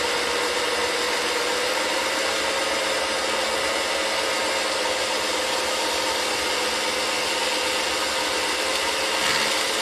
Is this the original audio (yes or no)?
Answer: yes